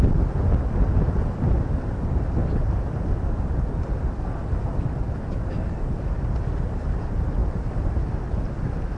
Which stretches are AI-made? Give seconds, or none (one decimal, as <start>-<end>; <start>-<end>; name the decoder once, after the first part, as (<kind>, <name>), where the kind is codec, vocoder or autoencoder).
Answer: none